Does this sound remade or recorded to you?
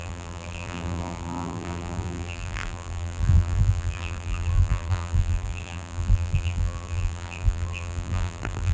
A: remade